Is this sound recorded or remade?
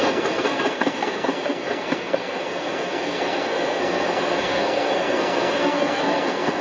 remade